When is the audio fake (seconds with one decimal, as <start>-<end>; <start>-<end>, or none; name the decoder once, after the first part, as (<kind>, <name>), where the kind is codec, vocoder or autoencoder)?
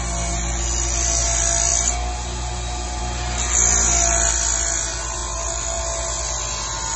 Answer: none